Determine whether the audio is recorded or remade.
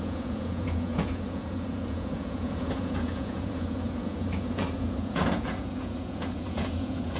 remade